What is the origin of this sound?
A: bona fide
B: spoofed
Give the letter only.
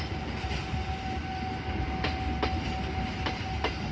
A